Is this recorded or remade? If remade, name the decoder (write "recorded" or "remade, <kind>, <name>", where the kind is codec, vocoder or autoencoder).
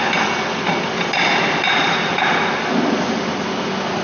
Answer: recorded